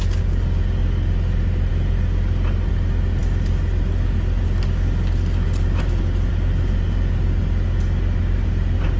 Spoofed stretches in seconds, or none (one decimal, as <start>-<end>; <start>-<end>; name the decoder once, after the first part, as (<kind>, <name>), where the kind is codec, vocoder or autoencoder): none